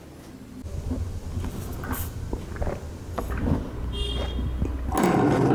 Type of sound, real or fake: real